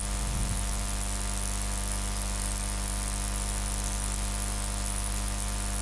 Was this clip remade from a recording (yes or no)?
no